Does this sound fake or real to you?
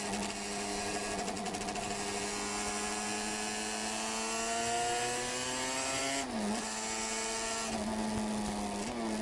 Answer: real